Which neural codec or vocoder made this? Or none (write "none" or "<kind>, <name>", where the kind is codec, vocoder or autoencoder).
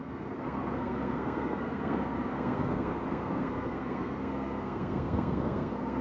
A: codec, SNAC